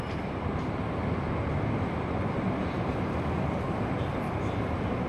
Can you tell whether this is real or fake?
real